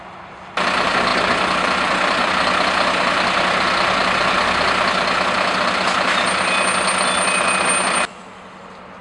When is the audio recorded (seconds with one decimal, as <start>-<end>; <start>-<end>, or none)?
0.0-9.0